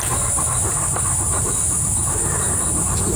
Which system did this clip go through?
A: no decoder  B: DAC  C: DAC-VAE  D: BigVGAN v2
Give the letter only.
D